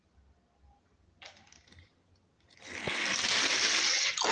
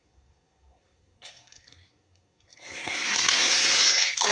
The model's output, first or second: second